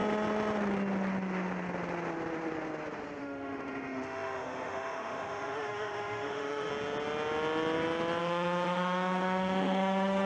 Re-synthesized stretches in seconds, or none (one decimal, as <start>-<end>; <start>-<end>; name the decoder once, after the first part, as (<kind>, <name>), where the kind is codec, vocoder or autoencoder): 3.2-6.7 (autoencoder, DAC-VAE); 8.2-10.3